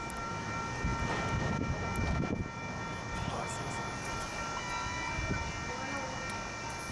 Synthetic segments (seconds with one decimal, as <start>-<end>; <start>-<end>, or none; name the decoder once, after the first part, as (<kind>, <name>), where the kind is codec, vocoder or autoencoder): none